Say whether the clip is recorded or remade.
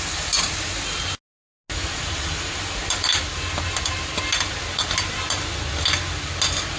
recorded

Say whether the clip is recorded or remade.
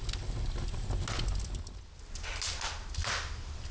recorded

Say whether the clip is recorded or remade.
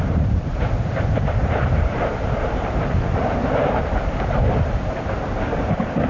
remade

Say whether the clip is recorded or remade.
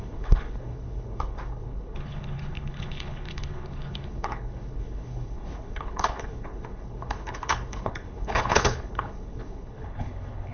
remade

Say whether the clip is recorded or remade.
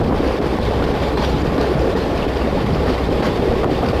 remade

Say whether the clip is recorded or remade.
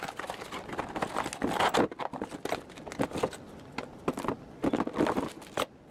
recorded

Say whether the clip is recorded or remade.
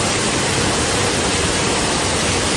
recorded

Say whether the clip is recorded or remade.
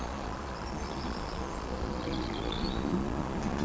remade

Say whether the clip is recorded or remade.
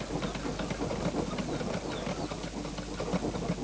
recorded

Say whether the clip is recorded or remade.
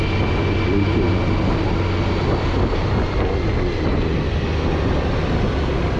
recorded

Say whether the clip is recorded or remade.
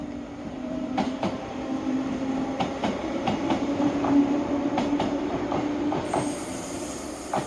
remade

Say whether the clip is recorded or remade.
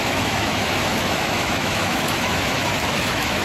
remade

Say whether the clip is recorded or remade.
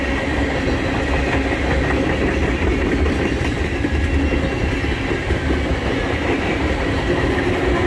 recorded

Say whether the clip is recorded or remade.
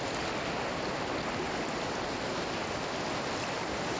recorded